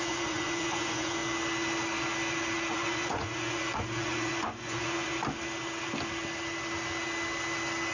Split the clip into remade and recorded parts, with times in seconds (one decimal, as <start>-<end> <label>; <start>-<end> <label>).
0.0-1.2 remade; 1.2-2.7 recorded; 2.7-5.1 remade; 5.1-7.9 recorded